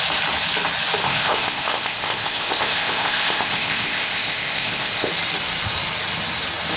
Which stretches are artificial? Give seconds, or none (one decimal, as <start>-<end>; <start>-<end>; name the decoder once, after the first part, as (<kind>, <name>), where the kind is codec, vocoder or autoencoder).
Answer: 1.0-5.1 (codec, ZipCodec)